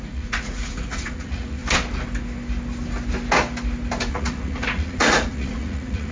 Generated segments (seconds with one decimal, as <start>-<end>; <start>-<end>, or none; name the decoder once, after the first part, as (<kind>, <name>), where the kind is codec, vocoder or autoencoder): 0.0-1.6 (vocoder, Vocos); 4.1-6.1